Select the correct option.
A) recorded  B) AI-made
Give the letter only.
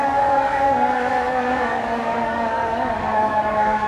B